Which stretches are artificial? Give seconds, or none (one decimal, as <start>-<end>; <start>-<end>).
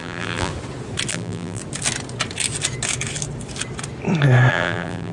0.0-0.5; 1.1-1.6; 4.5-5.1